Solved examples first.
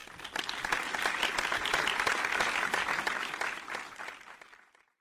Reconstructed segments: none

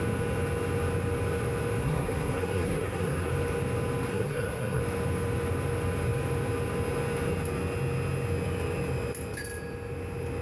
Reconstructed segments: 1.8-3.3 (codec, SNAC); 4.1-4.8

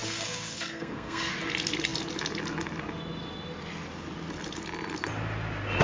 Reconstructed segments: 0.0-1.3 (codec, SNAC)

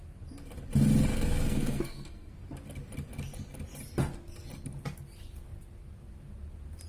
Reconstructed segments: 1.1-2.3 (codec, SNAC)